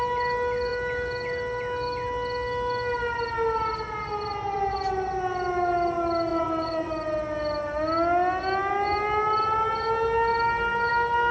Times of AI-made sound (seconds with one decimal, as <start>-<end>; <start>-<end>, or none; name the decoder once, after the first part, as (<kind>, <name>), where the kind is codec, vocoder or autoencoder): 6.3-6.9 (vocoder, Vocos)